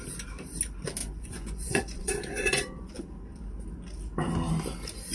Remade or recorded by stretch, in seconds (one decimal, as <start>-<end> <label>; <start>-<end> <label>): 0.0-1.0 recorded; 1.0-2.9 remade; 2.9-5.1 recorded